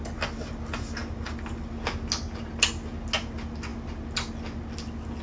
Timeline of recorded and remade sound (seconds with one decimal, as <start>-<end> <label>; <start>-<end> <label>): 0.0-5.2 recorded